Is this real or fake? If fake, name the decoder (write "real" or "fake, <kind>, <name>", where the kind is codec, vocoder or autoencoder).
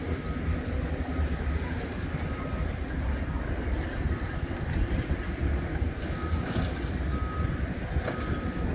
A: real